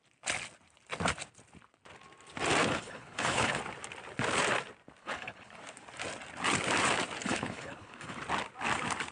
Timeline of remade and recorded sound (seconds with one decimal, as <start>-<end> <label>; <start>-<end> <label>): 0.0-2.6 recorded; 2.6-3.6 remade; 3.6-5.0 recorded; 5.0-5.6 remade; 5.6-7.2 recorded; 7.2-8.2 remade; 8.2-9.1 recorded